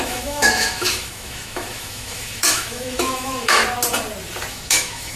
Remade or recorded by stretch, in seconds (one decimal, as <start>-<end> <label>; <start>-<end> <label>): 0.0-3.6 remade; 3.6-4.5 recorded; 4.5-5.2 remade